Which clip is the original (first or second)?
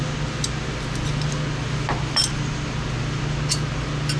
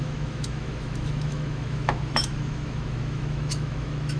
first